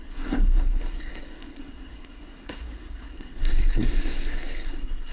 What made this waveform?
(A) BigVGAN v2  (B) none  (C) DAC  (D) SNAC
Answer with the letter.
D